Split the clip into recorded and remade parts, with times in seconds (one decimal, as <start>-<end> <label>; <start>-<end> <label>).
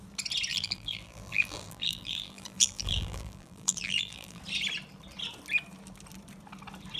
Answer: 0.0-0.5 recorded; 0.5-4.4 remade; 4.4-7.0 recorded